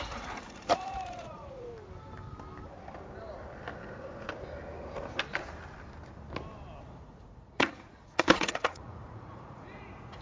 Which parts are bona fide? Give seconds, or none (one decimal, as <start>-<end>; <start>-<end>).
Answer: 1.7-6.8